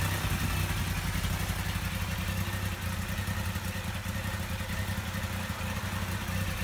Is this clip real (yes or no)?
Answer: yes